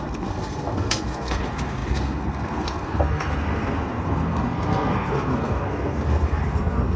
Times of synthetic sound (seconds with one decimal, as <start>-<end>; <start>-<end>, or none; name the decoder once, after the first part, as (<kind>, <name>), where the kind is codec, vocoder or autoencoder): 0.0-7.0 (codec, SNAC)